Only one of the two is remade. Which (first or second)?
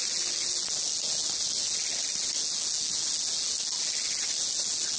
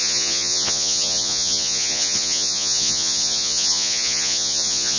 second